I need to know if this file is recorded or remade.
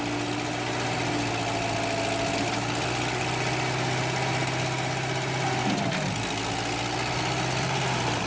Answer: recorded